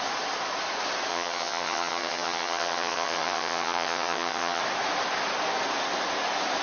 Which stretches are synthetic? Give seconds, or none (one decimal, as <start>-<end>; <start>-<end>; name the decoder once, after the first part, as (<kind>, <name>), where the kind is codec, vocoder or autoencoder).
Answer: 1.1-4.6 (vocoder, HiFi-GAN)